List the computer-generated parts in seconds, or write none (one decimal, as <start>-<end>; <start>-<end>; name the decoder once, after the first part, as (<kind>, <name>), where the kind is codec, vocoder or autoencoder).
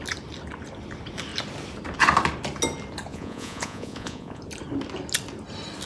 3.1-4.4 (vocoder, Vocos)